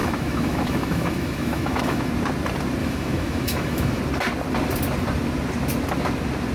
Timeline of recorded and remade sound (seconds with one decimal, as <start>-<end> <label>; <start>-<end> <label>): 0.0-2.1 remade; 2.1-2.8 recorded; 2.8-4.0 remade; 4.0-6.5 recorded